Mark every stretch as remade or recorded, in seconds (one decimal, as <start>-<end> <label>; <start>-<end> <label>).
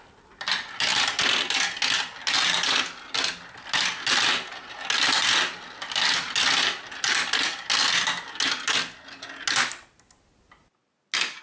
0.0-11.4 recorded